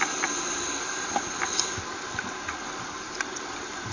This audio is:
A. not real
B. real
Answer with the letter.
A